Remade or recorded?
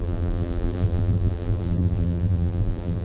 remade